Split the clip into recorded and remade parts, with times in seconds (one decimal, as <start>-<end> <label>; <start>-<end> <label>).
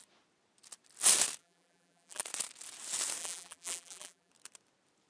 0.0-1.4 recorded; 1.4-2.2 remade; 2.2-3.2 recorded; 3.2-4.3 remade; 4.3-5.1 recorded